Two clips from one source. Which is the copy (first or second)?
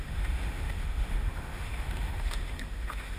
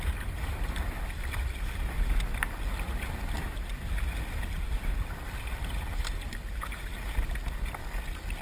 first